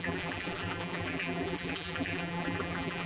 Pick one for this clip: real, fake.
fake